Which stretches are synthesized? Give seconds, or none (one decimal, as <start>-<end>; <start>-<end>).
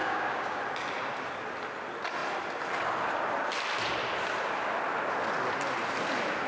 0.0-0.6